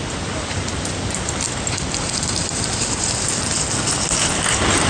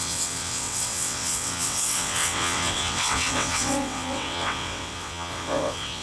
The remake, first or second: second